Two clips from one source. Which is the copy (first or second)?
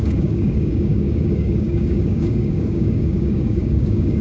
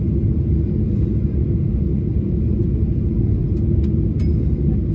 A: first